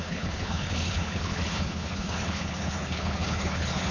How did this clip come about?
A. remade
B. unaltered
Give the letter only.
A